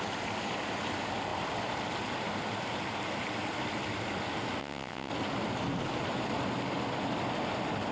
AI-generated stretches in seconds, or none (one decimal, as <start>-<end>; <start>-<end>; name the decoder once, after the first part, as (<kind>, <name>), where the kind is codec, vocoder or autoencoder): 4.6-5.1 (vocoder, WaveNeXt)